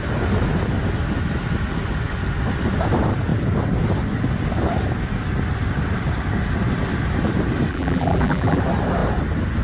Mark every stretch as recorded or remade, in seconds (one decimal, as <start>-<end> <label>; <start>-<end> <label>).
0.0-7.7 recorded; 7.7-8.6 remade; 8.6-9.6 recorded